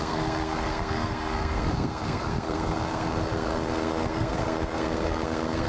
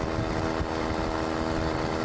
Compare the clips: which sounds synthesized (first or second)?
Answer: first